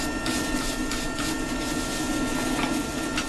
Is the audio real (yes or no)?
yes